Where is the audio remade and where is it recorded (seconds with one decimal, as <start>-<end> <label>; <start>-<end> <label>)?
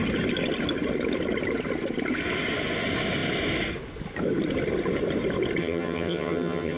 0.0-5.6 recorded; 5.6-6.8 remade